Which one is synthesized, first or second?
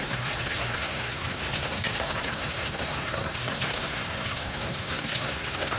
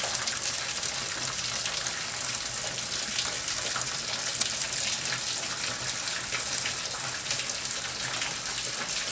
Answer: first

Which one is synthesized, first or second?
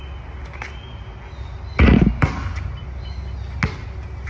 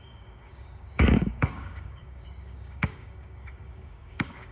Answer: second